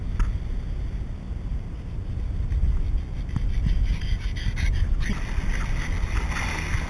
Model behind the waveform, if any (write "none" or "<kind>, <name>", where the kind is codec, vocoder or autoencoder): none